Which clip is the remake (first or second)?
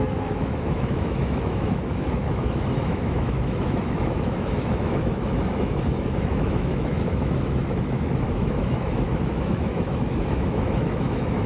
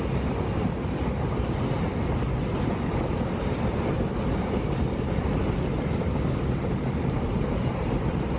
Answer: first